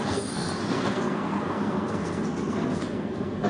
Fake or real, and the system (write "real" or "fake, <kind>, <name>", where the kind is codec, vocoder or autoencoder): fake, codec, SNAC